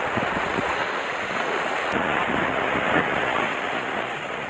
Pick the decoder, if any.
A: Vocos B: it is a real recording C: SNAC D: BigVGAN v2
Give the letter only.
A